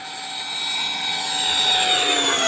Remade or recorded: recorded